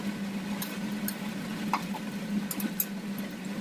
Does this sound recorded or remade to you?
recorded